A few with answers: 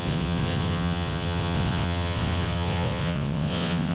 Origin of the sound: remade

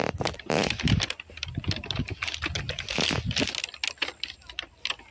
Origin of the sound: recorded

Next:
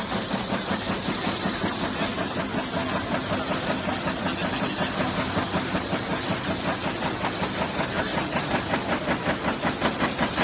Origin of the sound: recorded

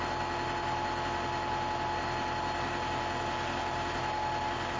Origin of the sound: recorded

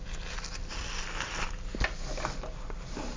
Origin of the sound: recorded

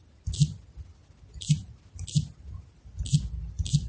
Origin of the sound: recorded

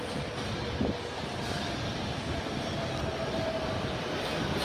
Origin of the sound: recorded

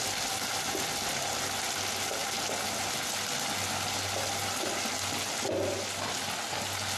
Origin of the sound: recorded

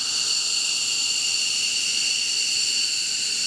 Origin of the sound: recorded